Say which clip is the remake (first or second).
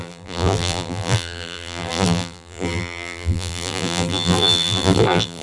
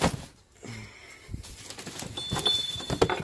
first